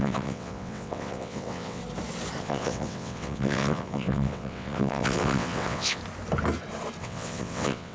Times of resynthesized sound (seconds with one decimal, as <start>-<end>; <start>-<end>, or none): 0.0-1.8; 2.4-6.0; 7.0-7.9